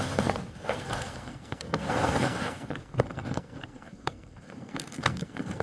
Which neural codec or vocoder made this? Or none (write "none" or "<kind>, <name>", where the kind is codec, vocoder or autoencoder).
codec, SNAC